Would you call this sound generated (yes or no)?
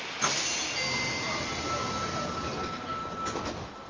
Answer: no